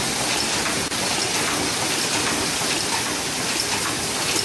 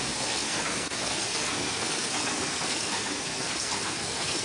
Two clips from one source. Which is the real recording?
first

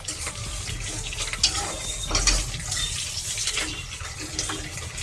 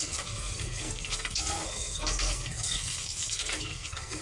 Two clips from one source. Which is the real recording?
first